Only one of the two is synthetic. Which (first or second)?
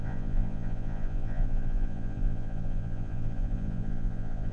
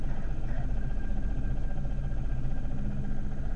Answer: first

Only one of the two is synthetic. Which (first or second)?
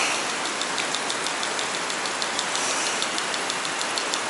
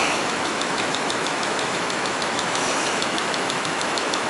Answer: second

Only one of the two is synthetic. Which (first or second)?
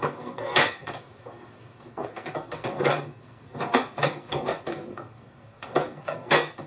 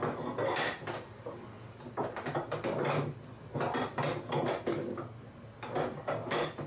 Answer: first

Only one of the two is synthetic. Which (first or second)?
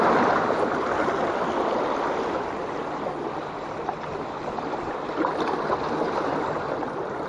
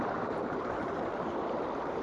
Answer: second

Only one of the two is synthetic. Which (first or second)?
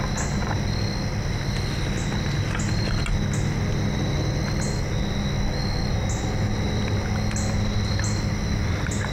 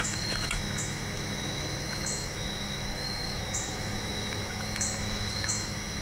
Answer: second